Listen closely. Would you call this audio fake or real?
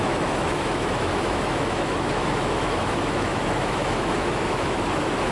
fake